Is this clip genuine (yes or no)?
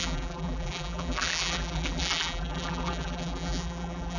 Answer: no